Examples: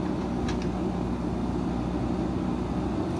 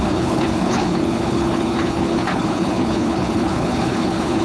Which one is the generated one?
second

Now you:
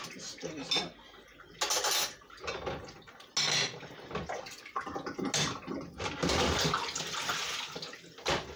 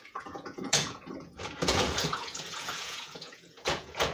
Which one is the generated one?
second